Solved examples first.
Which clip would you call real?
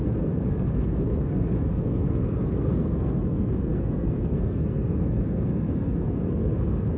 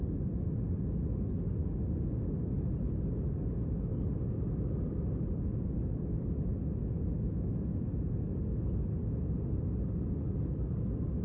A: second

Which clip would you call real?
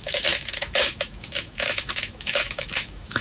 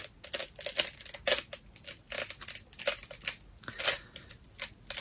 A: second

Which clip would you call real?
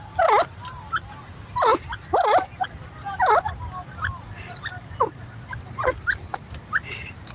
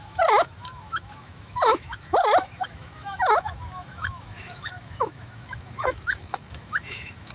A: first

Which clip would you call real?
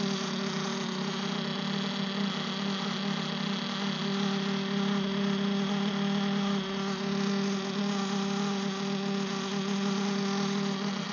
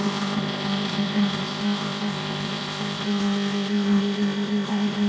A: first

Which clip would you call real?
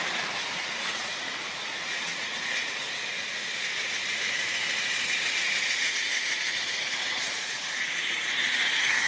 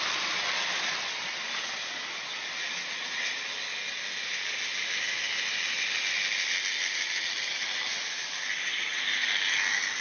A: second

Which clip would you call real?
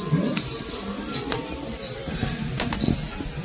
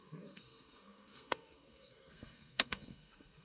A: first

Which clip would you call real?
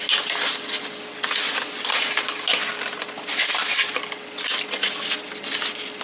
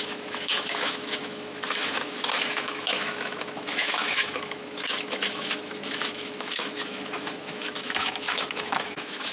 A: first